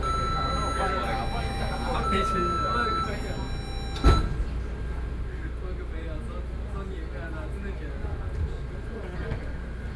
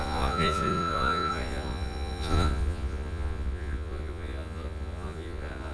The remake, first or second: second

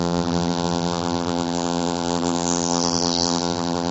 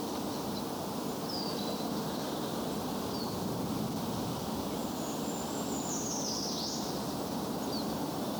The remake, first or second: first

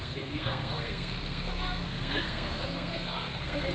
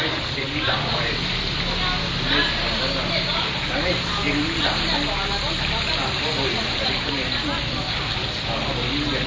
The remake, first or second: first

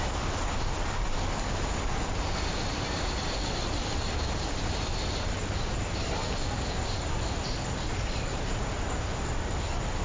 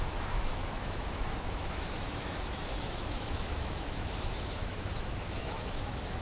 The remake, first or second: second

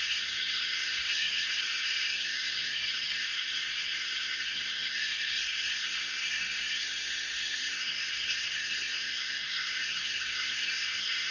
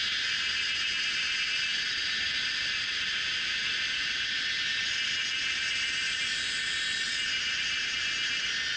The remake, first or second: first